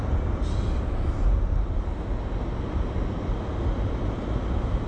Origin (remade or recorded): recorded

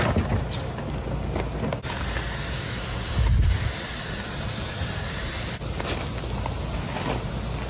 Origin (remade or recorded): recorded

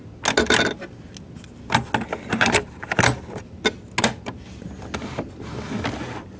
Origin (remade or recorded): recorded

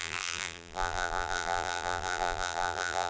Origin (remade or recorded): remade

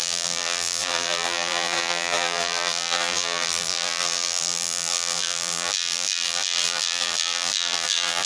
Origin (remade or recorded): remade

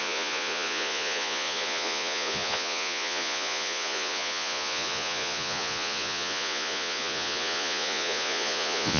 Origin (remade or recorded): remade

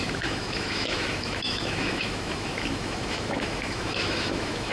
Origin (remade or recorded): remade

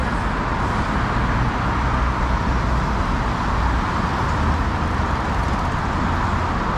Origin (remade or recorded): recorded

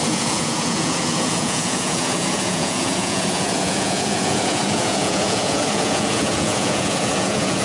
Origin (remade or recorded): remade